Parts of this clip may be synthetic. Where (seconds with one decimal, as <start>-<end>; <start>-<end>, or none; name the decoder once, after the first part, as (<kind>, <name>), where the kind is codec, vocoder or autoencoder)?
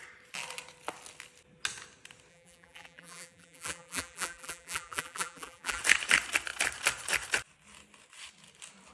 2.3-5.8 (vocoder, BigVGAN v2)